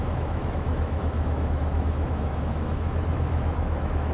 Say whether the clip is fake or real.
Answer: fake